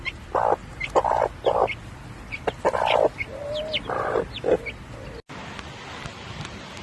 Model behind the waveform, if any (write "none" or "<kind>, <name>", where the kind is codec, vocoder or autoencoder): none